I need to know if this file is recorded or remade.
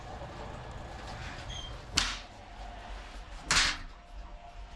recorded